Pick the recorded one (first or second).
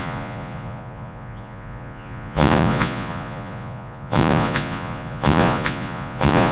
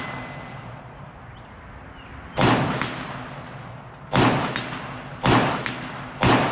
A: second